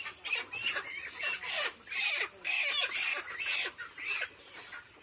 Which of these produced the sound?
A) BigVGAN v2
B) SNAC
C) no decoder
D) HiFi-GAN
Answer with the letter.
C